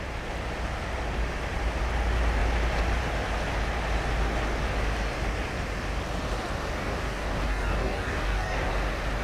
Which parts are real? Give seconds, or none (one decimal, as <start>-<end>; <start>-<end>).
0.0-6.8; 8.7-9.2